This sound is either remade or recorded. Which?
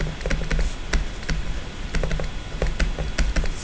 recorded